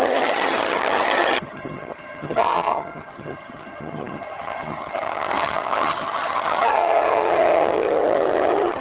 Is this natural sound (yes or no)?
no